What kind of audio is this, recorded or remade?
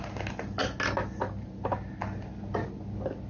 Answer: recorded